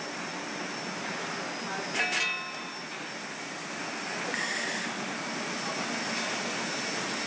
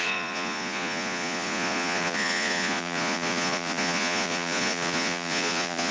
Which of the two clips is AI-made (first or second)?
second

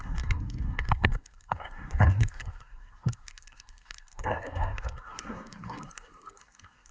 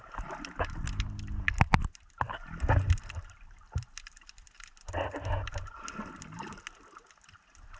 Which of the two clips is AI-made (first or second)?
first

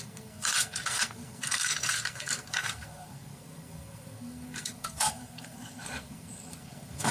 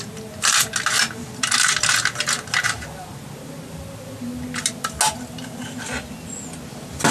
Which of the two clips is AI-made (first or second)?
first